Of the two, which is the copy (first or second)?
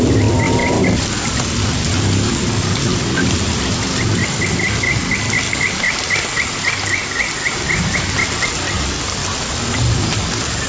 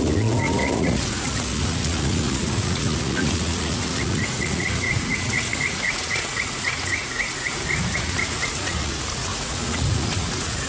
second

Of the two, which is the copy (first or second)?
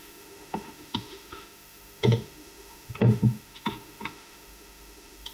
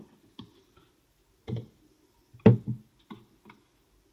first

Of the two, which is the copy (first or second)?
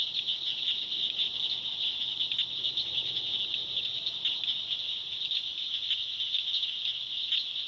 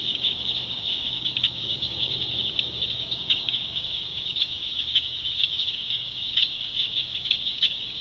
second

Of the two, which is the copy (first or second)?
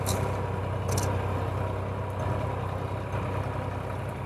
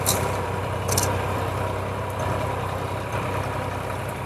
second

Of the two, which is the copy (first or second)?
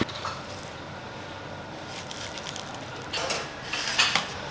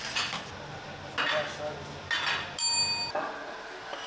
first